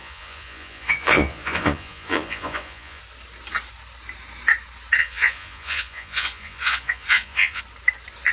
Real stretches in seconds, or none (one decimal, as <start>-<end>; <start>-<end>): 3.0-5.0; 7.6-8.3

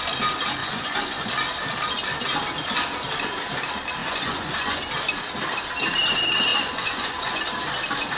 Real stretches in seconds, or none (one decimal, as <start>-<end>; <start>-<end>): 0.0-0.6; 1.3-4.0; 4.8-6.5; 7.4-8.2

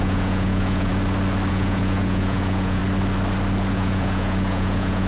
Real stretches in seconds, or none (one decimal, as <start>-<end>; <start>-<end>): 0.9-1.5; 2.8-3.7

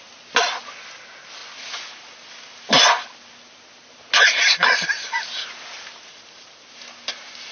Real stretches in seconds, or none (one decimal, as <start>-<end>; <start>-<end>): 0.0-7.5

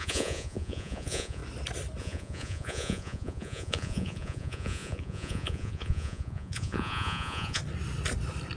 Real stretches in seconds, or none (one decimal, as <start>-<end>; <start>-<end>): 1.4-2.0; 7.6-8.6

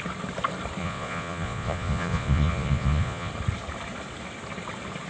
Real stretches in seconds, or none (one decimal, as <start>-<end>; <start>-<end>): 0.0-0.8; 3.3-5.1

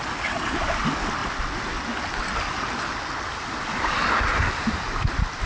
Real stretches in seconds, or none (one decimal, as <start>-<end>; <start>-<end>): 0.0-5.5

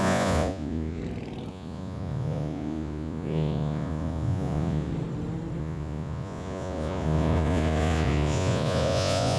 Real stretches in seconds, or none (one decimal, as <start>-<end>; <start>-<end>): 1.0-1.5; 4.9-5.6